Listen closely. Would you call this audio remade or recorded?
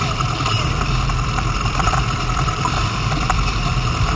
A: remade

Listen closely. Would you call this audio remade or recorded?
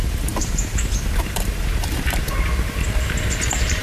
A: remade